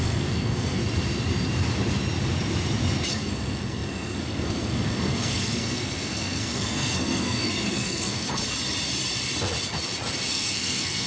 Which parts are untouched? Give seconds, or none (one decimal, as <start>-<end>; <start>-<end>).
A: 0.8-3.1; 8.4-10.3